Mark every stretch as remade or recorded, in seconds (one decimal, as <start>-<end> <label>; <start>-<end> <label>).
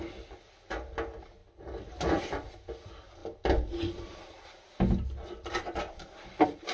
0.0-6.7 recorded